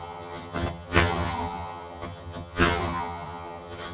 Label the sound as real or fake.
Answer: fake